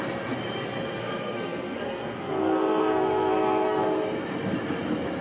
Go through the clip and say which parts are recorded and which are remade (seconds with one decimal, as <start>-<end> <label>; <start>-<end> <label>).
0.0-1.0 recorded; 1.0-3.8 remade; 3.8-5.2 recorded